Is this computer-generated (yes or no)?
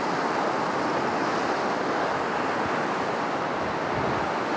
no